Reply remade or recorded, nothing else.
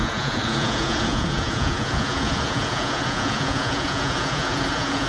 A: remade